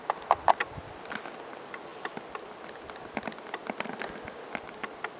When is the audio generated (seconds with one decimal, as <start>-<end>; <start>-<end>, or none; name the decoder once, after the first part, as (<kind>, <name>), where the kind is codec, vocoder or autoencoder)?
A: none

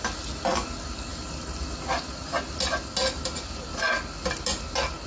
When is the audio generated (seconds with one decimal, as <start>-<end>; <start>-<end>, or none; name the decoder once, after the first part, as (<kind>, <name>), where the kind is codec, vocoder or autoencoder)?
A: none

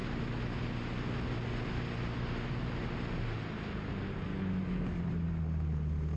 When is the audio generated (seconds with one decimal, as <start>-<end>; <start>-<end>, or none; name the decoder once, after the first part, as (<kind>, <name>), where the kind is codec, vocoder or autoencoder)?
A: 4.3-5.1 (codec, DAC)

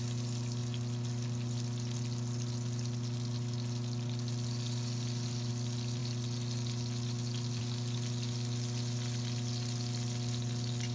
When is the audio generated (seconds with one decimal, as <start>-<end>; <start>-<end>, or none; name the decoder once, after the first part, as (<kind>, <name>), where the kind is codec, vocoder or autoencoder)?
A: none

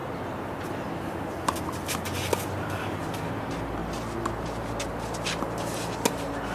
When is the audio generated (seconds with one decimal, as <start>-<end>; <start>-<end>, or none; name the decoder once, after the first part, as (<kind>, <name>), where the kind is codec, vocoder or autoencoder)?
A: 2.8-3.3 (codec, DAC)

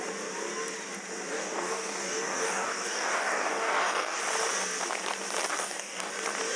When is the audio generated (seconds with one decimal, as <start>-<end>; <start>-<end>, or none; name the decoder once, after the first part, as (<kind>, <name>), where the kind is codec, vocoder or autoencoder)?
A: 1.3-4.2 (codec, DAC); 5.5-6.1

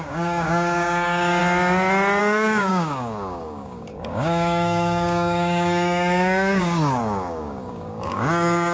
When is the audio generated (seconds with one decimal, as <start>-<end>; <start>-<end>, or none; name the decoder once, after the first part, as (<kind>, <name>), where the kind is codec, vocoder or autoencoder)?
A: 0.0-1.4 (codec, DAC); 2.2-8.7

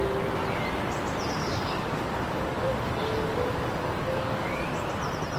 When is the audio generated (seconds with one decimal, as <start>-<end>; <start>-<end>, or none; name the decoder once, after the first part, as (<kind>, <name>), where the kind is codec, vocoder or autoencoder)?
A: 1.4-4.6 (codec, DAC)